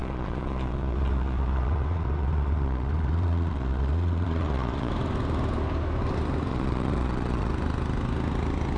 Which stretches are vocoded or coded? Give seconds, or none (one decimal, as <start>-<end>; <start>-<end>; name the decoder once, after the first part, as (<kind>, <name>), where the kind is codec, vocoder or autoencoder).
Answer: 0.0-4.9 (vocoder, Vocos); 6.5-7.5